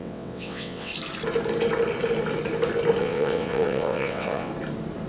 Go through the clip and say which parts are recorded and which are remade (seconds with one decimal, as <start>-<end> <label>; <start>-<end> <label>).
0.0-0.9 remade; 0.9-3.0 recorded; 3.0-4.5 remade; 4.5-5.1 recorded